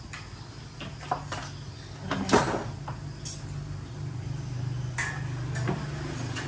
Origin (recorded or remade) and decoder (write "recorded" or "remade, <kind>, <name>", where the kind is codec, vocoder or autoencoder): recorded